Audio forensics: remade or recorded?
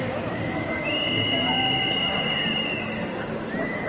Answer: recorded